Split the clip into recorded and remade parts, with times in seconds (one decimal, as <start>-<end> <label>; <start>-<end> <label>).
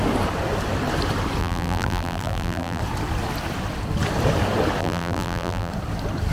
0.0-1.4 recorded; 1.4-2.8 remade; 2.8-4.8 recorded; 4.8-5.7 remade; 5.7-6.3 recorded